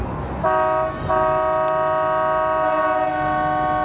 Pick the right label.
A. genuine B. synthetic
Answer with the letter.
A